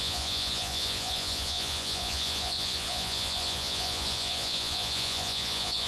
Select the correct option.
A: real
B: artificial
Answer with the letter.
B